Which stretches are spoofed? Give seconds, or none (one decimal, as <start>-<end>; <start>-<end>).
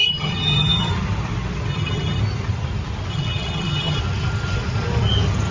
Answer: 0.0-0.9; 1.7-2.2; 3.1-4.0